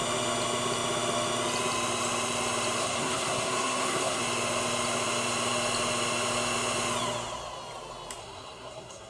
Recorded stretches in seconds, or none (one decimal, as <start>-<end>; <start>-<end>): 0.0-2.8; 4.2-8.2

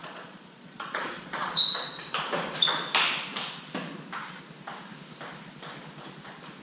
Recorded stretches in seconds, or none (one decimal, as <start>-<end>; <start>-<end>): 1.8-6.6

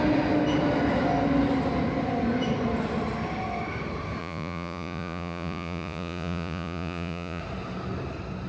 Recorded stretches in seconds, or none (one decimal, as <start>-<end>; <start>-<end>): 0.0-4.2; 7.4-8.5

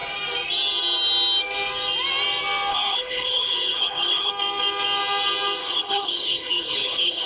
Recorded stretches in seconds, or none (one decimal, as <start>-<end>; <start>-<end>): 0.0-2.7; 4.3-5.6